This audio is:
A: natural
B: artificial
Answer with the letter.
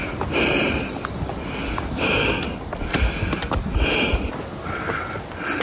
A